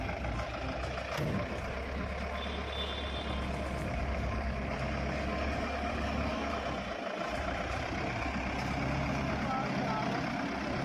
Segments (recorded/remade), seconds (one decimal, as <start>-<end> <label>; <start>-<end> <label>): 0.0-3.8 recorded; 3.8-6.5 remade; 6.5-10.8 recorded